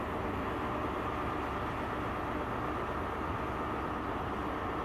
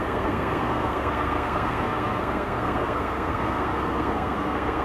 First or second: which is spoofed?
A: second